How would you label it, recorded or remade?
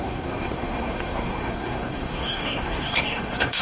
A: remade